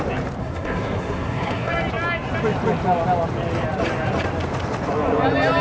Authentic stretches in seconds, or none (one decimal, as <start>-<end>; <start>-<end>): 0.0-0.4; 1.7-5.6